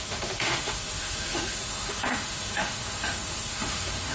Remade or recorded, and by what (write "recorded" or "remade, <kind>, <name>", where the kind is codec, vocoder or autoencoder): remade, autoencoder, DAC-VAE